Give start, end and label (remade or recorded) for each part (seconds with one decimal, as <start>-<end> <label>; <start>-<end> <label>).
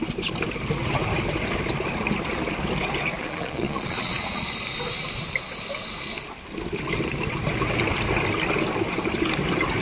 0.0-3.2 recorded; 3.2-4.5 remade; 4.5-9.8 recorded